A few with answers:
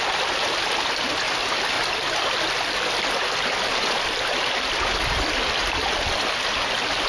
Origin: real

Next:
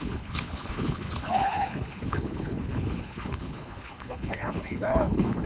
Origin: fake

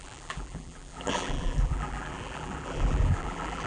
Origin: fake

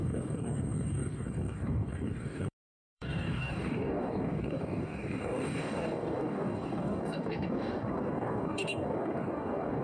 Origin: fake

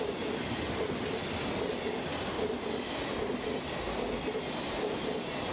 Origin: real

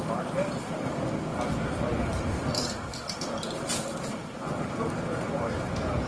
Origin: real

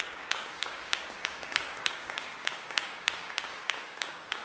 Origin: fake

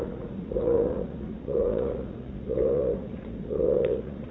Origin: fake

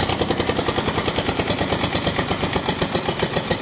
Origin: real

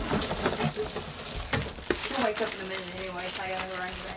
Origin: real